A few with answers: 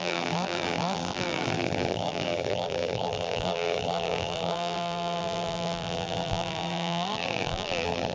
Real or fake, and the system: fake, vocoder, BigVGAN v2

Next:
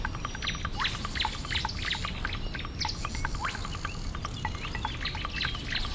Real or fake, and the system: real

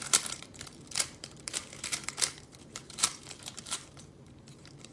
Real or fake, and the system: fake, vocoder, BigVGAN v2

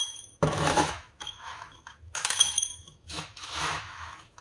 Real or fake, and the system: fake, autoencoder, DAC-VAE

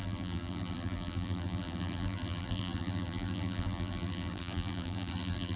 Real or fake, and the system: fake, vocoder, BigVGAN v2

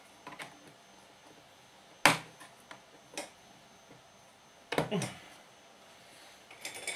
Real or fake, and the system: real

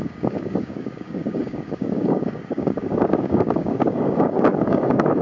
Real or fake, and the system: fake, codec, DAC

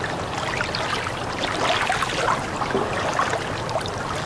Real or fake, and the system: real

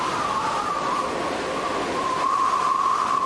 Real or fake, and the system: real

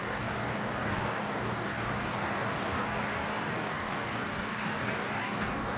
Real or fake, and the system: fake, codec, DAC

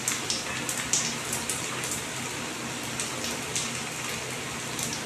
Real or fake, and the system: real